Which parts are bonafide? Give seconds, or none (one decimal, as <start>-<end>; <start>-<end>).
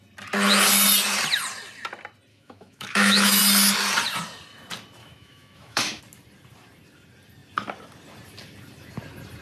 0.0-2.3; 3.4-5.0; 6.0-9.4